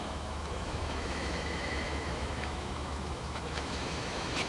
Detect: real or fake fake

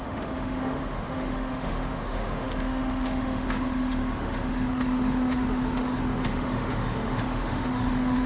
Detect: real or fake fake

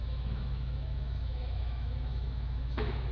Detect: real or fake fake